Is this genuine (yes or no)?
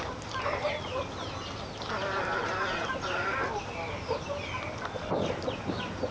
yes